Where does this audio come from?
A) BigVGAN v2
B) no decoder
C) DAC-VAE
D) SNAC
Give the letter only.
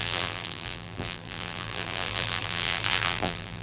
A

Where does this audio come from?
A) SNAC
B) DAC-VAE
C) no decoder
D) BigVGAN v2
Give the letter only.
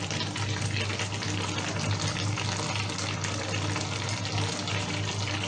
C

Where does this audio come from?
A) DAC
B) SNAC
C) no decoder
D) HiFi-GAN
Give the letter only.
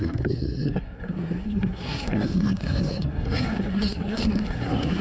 B